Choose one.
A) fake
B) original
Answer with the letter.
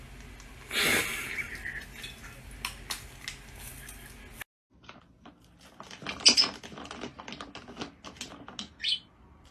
B